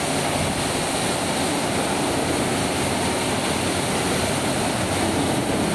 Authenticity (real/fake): real